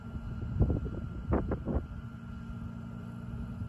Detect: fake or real real